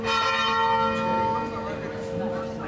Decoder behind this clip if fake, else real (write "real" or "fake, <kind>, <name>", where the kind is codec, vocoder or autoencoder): real